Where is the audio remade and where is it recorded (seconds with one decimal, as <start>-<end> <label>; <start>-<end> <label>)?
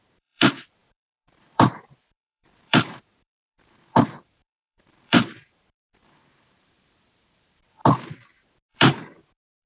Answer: 0.0-7.8 remade; 7.8-8.7 recorded; 8.7-9.7 remade